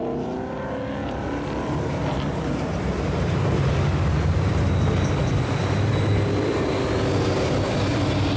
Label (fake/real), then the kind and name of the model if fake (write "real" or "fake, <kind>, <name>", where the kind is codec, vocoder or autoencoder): real